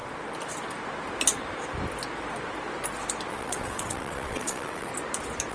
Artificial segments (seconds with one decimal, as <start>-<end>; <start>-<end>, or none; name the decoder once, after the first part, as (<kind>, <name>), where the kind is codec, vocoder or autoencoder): 3.3-4.9 (vocoder, WaveNeXt)